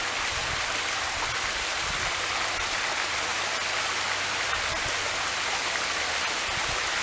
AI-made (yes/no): no